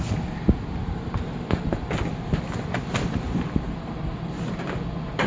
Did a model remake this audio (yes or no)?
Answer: no